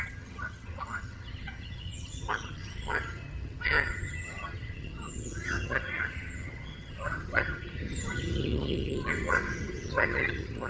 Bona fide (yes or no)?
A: no